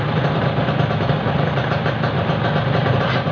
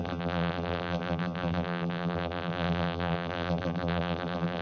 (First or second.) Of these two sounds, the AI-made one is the second